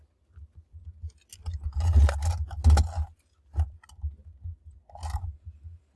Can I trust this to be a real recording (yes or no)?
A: yes